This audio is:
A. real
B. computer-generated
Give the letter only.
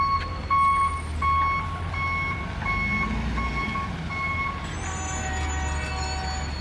A